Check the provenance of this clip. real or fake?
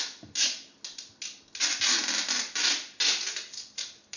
real